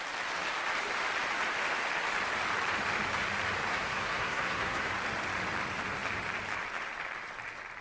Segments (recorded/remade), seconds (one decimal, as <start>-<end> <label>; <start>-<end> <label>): 0.0-3.7 recorded; 3.7-4.9 remade; 4.9-7.8 recorded